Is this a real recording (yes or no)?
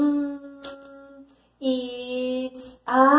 yes